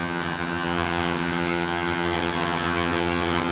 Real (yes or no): no